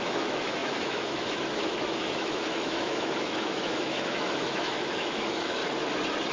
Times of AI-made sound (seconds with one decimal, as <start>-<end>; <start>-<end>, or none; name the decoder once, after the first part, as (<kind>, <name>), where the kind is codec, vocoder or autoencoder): 0.0-5.6 (autoencoder, DAC-VAE)